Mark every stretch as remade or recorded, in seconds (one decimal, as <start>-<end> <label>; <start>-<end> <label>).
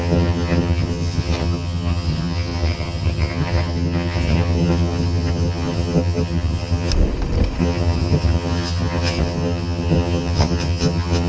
0.0-6.9 remade; 6.9-7.6 recorded; 7.6-11.3 remade